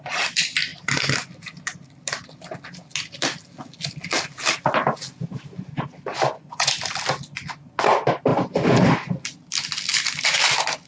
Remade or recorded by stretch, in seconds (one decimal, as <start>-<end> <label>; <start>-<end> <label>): 0.0-6.1 recorded; 6.1-6.7 remade; 6.7-10.9 recorded